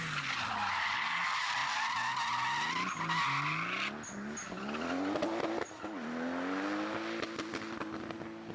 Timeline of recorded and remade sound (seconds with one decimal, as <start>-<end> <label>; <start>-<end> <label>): 0.0-8.5 recorded